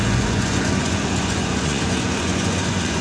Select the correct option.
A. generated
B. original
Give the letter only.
A